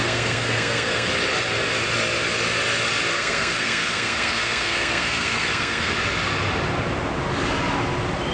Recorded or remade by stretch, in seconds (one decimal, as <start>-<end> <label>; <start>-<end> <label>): 0.0-1.1 remade; 1.1-3.1 recorded; 3.1-5.9 remade; 5.9-8.3 recorded